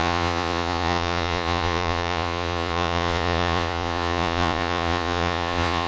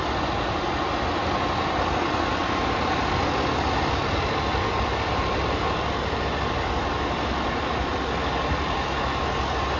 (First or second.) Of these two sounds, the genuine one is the second